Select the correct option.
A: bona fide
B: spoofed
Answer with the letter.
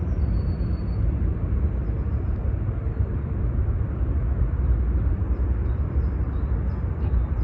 A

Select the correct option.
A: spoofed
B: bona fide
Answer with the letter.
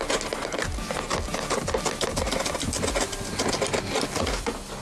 B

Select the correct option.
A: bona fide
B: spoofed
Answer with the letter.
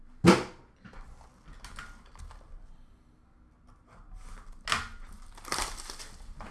A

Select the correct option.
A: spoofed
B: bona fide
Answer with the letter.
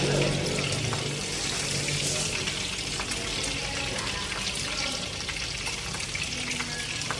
B